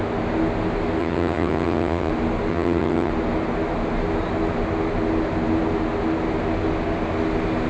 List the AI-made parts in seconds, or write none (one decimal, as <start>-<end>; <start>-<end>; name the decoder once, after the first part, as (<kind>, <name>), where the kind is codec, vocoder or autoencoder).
1.0-2.1 (vocoder, HiFi-GAN); 2.5-3.1